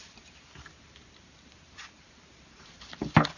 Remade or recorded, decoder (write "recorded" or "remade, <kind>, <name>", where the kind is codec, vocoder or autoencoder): recorded